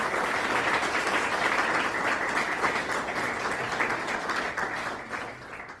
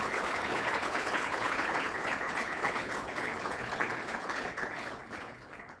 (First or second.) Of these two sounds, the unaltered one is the first